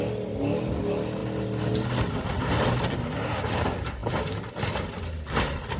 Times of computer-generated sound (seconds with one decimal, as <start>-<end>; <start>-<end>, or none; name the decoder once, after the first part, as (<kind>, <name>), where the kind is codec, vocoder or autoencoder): none